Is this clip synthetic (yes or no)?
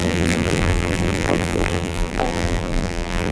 yes